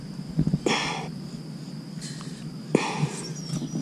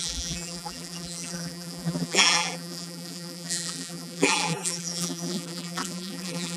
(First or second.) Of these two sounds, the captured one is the first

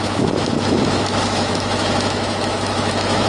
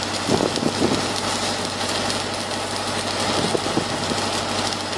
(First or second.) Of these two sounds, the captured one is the second